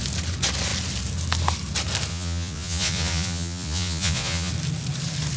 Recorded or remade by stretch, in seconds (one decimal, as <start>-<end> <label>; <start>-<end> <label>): 0.0-2.1 recorded; 2.1-4.5 remade; 4.5-5.4 recorded